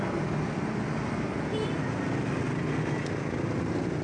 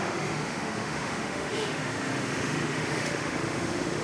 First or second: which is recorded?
first